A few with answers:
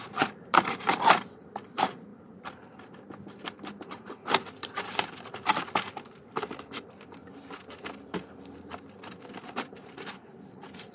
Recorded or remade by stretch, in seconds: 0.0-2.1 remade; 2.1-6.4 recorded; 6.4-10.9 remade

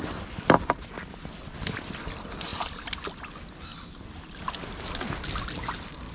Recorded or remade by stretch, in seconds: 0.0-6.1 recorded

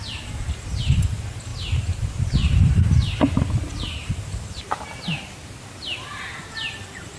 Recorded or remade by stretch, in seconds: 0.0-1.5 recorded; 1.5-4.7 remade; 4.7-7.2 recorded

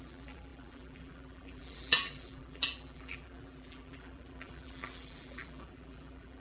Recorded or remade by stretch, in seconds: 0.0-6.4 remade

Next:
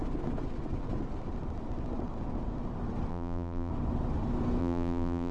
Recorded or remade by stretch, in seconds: 0.0-3.1 recorded; 3.1-3.7 remade; 3.7-4.6 recorded; 4.6-5.3 remade